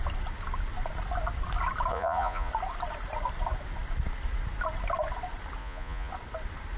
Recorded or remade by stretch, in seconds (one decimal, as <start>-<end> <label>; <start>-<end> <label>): 0.0-1.9 recorded; 1.9-2.5 remade; 2.5-5.6 recorded; 5.6-6.1 remade; 6.1-6.8 recorded